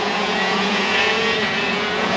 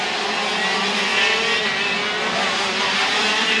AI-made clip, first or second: first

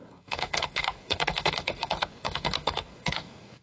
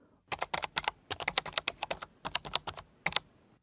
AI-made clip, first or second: first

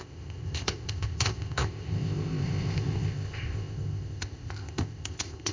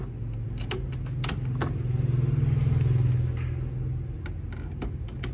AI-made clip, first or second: first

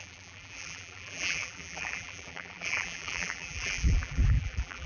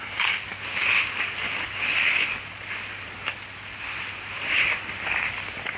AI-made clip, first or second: first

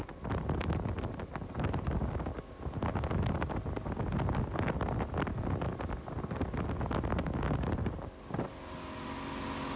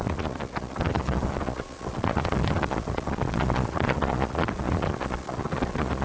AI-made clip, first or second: second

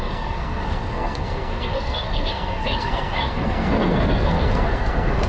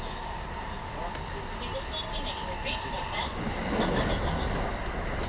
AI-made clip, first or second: first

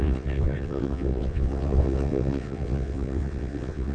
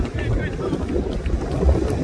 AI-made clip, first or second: first